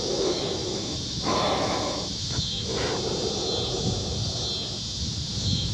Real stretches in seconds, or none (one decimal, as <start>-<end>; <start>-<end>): 2.7-5.0